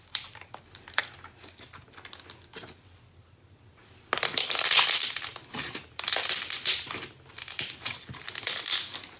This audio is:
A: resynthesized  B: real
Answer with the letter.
B